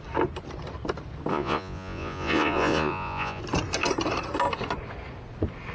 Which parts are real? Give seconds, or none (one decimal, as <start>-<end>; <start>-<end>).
0.0-1.3; 3.4-5.7